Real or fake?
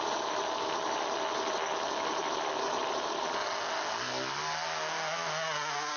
real